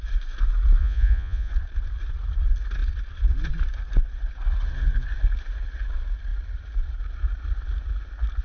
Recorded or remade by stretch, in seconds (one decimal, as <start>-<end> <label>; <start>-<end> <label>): 0.0-0.8 recorded; 0.8-1.5 remade; 1.5-8.4 recorded